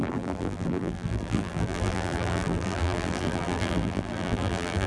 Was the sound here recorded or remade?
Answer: remade